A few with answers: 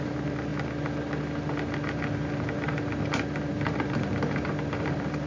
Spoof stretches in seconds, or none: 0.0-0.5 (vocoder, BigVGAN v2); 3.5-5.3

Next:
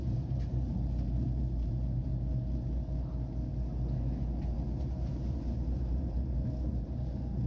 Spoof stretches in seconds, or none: 0.0-2.1 (vocoder, BigVGAN v2); 4.8-7.5

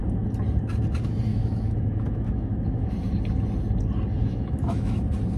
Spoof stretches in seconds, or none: 1.3-2.9 (autoencoder, DAC-VAE); 4.2-5.0

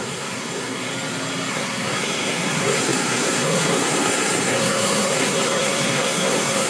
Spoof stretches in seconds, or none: 0.0-0.9 (codec, SNAC); 1.5-6.7

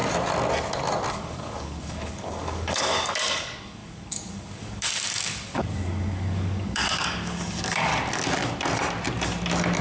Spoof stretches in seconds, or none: 1.1-7.9 (codec, DAC)

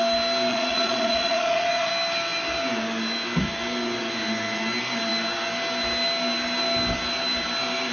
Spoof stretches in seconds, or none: 0.5-1.9 (vocoder, Vocos)

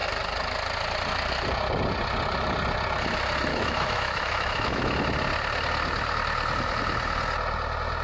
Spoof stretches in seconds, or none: 3.5-5.0 (autoencoder, DAC-VAE)